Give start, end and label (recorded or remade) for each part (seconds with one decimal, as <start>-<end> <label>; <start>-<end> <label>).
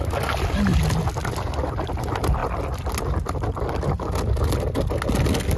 0.0-5.6 recorded